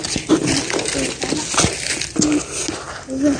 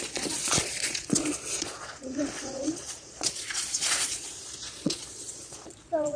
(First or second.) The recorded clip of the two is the first